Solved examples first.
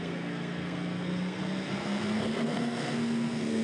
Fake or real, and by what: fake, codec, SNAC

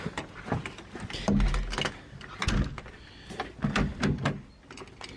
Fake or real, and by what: real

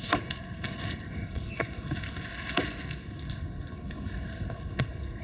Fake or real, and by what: fake, codec, SNAC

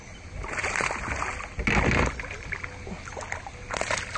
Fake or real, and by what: real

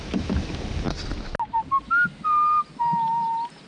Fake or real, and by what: real